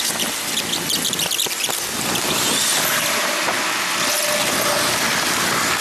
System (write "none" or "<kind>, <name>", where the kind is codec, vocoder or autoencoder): none